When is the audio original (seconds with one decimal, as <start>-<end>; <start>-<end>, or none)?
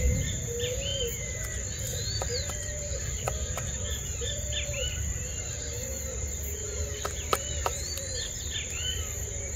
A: 0.9-2.2; 3.0-4.1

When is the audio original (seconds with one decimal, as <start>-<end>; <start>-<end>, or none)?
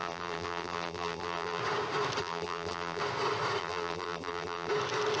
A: 1.6-2.2; 3.0-3.6; 4.7-5.2